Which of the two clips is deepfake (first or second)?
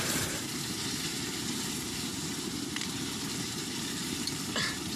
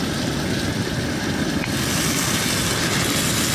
first